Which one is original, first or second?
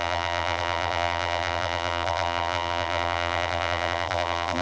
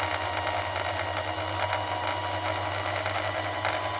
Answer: second